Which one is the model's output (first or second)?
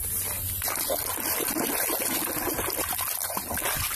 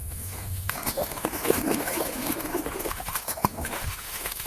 second